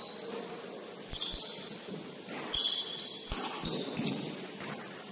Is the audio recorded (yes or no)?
yes